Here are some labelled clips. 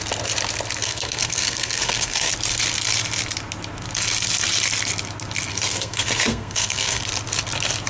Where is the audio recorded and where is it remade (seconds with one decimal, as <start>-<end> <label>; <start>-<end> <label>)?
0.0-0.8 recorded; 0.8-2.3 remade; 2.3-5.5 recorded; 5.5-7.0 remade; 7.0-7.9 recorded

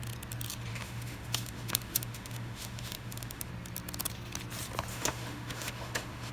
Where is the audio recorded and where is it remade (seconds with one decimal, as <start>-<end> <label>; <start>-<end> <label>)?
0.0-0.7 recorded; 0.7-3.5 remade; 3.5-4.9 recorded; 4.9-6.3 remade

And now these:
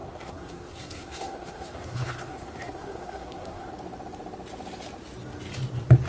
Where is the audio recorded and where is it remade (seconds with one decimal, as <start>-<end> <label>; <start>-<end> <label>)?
0.0-3.7 remade; 3.7-6.1 recorded